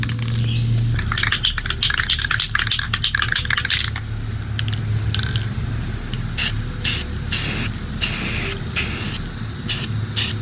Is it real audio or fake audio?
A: real